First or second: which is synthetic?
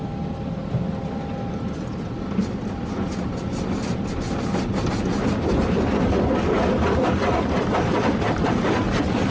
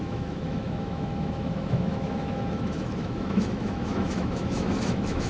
second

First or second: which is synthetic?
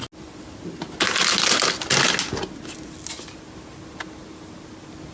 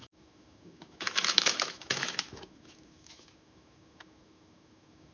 second